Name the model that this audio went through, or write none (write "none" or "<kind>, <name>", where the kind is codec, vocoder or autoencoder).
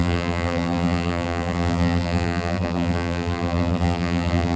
vocoder, BigVGAN v2